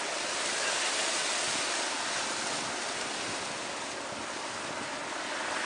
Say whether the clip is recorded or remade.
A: recorded